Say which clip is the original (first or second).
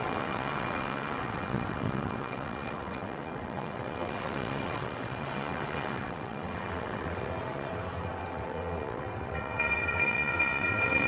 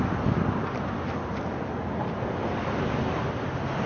second